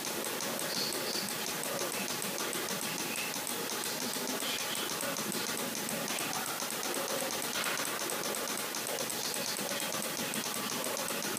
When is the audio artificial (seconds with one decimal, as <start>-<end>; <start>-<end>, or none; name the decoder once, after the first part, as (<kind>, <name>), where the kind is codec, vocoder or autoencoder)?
none